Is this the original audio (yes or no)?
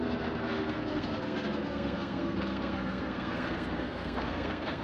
no